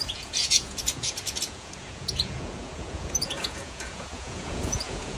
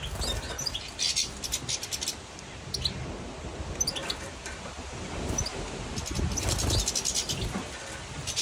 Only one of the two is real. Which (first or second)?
second